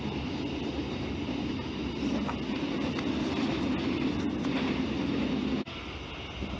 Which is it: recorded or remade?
recorded